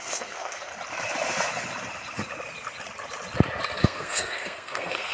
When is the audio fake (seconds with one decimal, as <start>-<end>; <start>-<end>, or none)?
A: 0.0-0.7; 3.8-5.1